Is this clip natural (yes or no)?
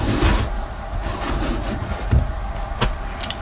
yes